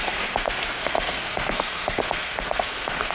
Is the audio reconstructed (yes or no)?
yes